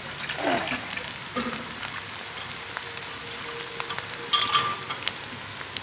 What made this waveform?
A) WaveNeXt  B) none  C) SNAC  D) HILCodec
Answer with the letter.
B